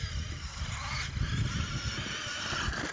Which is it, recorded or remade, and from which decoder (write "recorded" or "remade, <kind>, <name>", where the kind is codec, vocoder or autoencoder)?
recorded